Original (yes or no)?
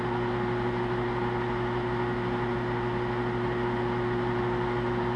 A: yes